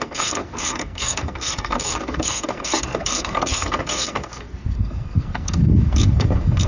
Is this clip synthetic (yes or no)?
yes